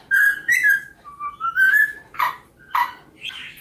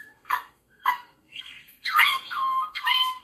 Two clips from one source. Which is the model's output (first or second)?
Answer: second